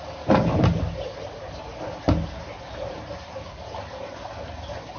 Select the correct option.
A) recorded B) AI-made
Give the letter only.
A